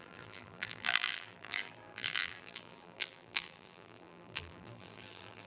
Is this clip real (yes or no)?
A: no